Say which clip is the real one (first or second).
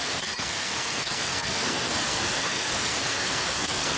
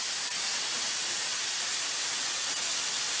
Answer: second